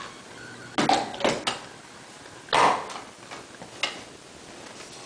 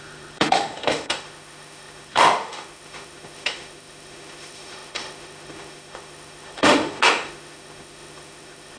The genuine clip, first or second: first